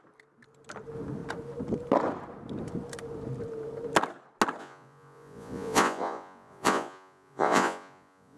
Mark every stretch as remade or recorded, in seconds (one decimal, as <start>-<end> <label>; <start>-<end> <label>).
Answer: 0.0-4.6 recorded; 4.6-8.4 remade